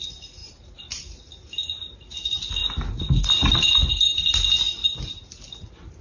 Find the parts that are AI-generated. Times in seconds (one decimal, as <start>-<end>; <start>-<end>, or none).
0.4-1.0; 4.8-5.3